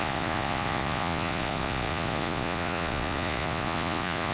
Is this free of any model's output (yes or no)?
no